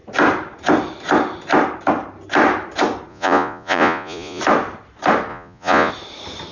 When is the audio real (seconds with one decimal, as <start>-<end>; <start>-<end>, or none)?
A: 0.0-3.1; 4.4-5.3; 5.9-6.5